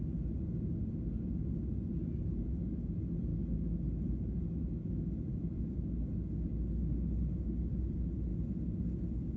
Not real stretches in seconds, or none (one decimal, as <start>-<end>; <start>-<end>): none